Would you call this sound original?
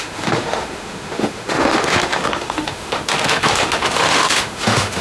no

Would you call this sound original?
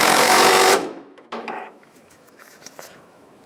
no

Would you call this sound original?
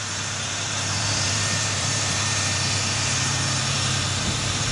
no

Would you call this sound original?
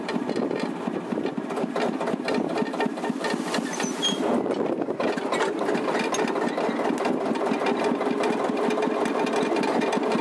yes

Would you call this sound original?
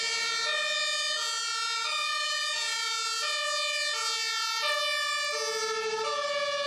yes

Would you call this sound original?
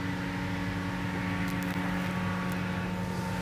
yes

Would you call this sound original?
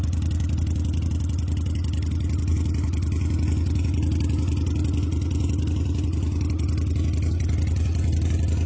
yes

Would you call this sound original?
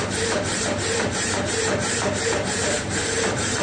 no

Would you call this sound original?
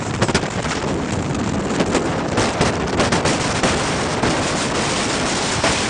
no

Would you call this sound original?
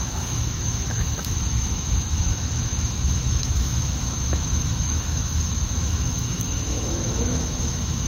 no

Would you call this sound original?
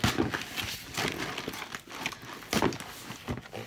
yes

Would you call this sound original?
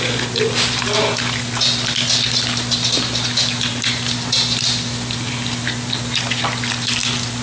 yes